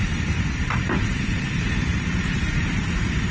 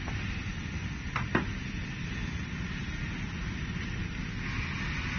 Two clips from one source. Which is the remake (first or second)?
first